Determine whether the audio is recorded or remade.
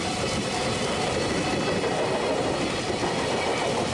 recorded